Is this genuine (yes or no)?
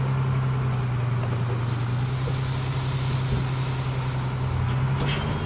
yes